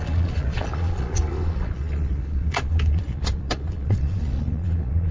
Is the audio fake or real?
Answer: fake